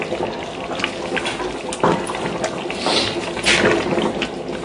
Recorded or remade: recorded